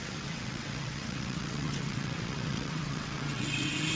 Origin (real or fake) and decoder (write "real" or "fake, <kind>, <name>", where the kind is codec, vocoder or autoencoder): fake, vocoder, WaveNeXt